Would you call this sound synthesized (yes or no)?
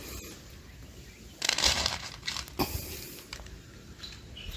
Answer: yes